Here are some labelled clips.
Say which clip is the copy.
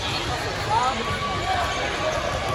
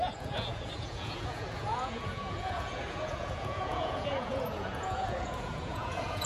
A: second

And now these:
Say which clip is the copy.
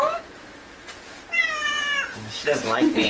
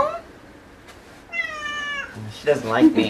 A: first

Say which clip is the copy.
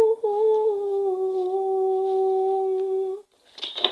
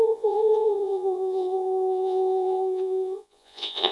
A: second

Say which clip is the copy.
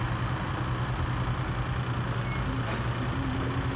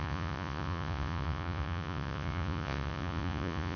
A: second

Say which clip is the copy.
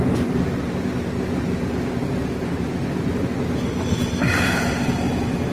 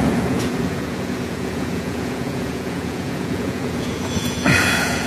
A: second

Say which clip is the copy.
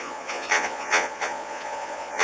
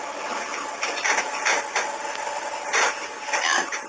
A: first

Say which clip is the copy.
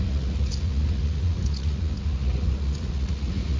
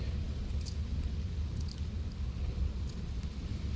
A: first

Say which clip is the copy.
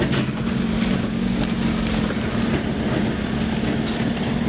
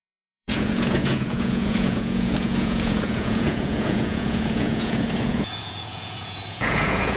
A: second